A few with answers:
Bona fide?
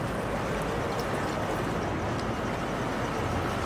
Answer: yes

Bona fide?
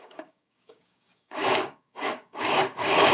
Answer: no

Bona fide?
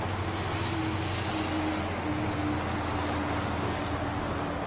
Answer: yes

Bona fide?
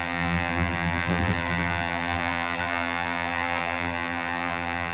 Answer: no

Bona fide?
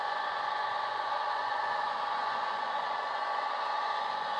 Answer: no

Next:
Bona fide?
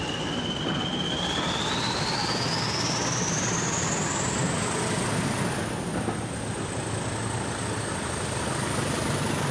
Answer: yes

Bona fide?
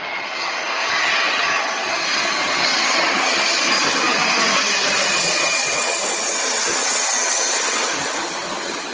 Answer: no